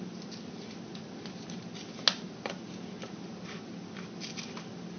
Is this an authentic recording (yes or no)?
yes